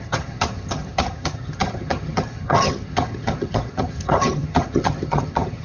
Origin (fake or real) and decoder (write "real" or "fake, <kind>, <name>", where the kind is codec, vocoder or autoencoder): fake, vocoder, HiFi-GAN